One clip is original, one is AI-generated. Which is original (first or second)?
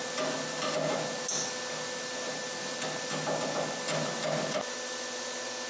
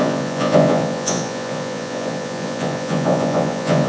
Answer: first